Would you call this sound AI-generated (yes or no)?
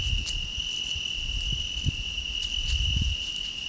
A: no